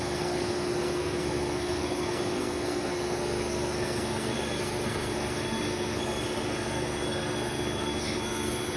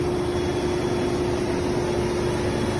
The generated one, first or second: first